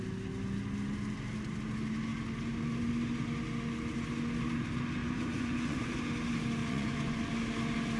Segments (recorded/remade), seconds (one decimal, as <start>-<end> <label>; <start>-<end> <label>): 0.0-5.0 recorded; 5.0-6.0 remade; 6.0-6.6 recorded; 6.6-7.2 remade; 7.2-8.0 recorded